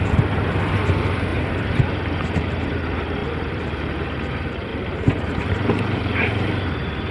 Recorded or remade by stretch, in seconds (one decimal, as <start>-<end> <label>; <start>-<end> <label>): 0.0-1.3 recorded; 1.3-2.8 remade; 2.8-3.2 recorded; 3.2-3.9 remade; 3.9-4.7 recorded; 4.7-7.1 remade

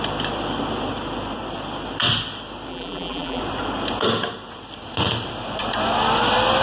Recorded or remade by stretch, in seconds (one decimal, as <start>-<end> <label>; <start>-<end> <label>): 0.0-2.7 recorded; 2.7-3.4 remade; 3.4-6.6 recorded

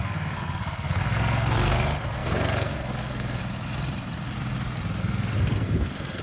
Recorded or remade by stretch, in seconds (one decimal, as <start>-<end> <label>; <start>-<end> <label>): 0.0-3.4 remade; 3.4-5.0 recorded; 5.0-6.2 remade

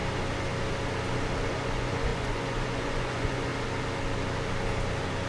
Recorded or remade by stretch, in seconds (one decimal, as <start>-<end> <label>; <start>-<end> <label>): 0.0-1.5 recorded; 1.5-3.5 remade; 3.5-5.3 recorded

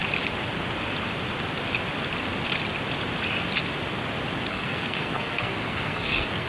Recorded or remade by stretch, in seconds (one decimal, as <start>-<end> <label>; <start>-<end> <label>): 0.0-4.5 recorded; 4.5-6.5 remade